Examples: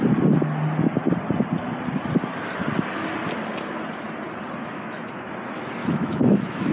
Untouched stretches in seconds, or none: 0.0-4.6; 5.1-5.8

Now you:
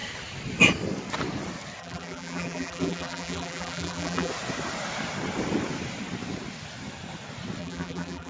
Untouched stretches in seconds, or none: 0.0-1.8; 4.3-7.6